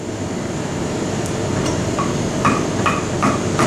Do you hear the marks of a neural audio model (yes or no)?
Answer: yes